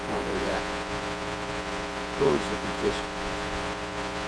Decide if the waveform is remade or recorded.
remade